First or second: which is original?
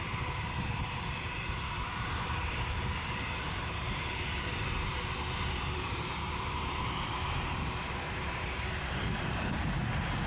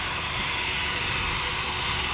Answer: second